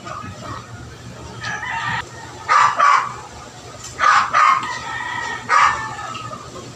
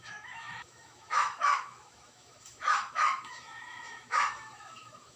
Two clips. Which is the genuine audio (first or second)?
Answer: first